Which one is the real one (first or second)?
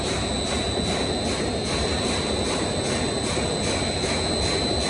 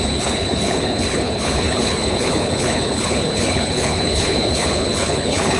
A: first